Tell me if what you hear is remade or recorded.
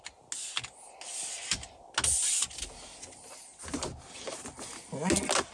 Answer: recorded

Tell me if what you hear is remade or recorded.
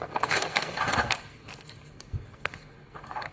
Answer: remade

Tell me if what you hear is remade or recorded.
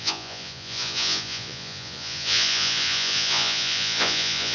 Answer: remade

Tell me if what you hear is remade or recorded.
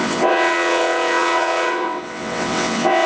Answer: remade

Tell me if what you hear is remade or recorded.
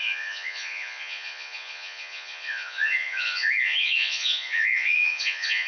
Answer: remade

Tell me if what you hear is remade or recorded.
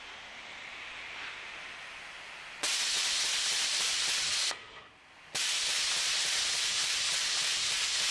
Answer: recorded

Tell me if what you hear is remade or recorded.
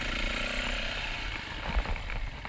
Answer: remade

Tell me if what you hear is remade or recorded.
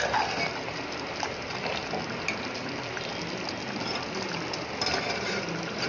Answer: recorded